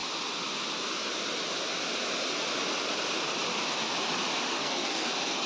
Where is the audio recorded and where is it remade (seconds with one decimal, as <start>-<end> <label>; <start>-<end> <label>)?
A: 0.0-4.5 recorded; 4.5-5.5 remade